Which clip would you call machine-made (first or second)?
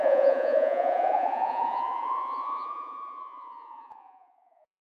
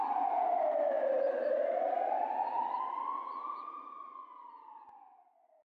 first